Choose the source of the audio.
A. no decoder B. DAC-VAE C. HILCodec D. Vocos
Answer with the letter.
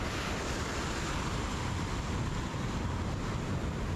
A